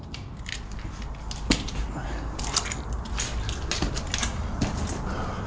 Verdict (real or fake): real